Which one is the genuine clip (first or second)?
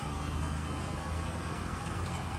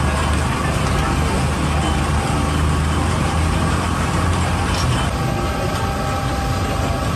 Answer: second